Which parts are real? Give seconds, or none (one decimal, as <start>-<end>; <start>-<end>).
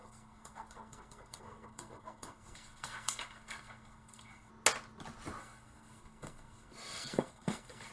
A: 4.5-5.4